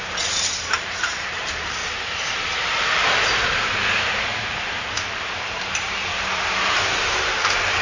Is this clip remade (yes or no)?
yes